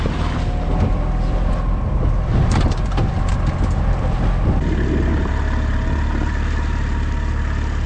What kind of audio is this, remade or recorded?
recorded